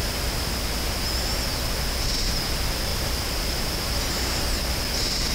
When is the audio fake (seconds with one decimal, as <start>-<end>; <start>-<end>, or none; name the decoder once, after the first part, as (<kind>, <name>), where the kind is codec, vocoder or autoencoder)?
none